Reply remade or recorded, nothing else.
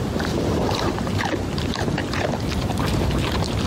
recorded